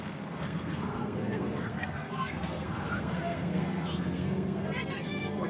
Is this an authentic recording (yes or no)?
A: no